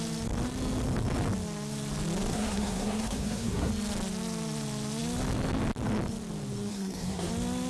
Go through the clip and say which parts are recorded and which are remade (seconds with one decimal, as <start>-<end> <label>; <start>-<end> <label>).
0.0-2.3 recorded; 2.3-3.7 remade; 3.7-6.7 recorded; 6.7-7.3 remade; 7.3-7.7 recorded